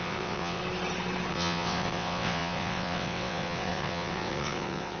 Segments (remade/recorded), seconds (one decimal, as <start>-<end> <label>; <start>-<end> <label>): 0.0-0.6 remade; 0.6-1.3 recorded; 1.3-5.0 remade